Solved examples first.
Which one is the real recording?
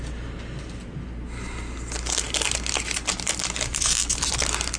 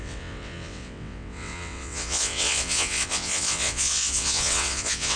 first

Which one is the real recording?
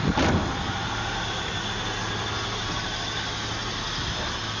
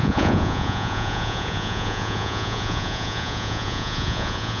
first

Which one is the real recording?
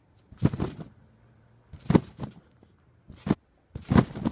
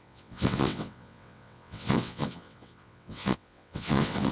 first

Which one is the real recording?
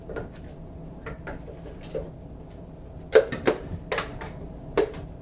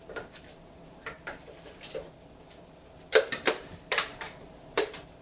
first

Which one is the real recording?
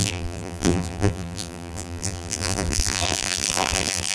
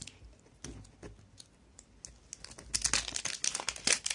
second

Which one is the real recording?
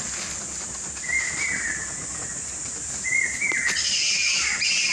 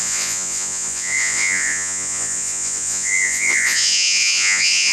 first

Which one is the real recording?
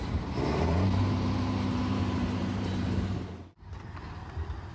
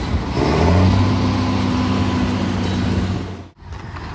second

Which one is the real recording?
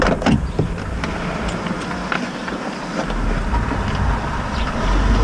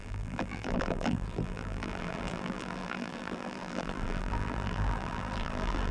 first